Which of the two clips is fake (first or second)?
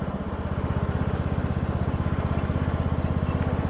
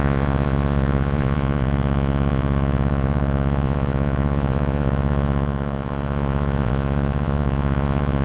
second